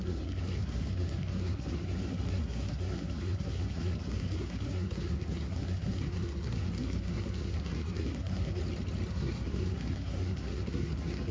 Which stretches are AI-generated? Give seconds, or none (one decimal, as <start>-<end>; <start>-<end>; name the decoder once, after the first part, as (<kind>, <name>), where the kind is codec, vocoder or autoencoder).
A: 0.0-8.6 (codec, SNAC); 9.1-11.3